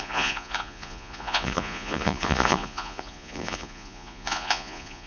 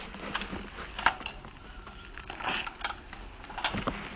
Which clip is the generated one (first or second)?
first